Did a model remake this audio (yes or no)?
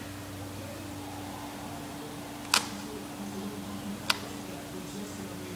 no